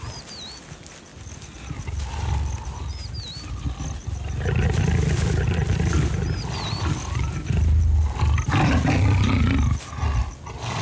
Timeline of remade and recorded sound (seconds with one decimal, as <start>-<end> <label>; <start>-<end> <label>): 0.0-10.8 recorded